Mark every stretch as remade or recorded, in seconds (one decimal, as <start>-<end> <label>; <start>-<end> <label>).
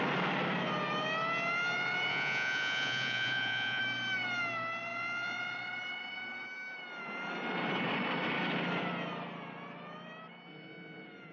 0.0-2.1 recorded; 2.1-3.8 remade; 3.8-11.3 recorded